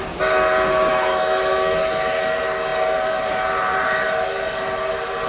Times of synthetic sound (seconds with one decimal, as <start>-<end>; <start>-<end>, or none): 0.9-1.5